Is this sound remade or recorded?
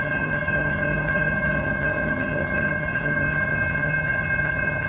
remade